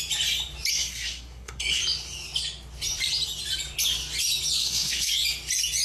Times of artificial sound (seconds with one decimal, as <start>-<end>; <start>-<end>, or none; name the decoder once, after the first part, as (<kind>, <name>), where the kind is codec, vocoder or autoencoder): 0.7-1.8 (codec, SNAC); 4.6-5.1